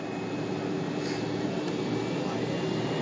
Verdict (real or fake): real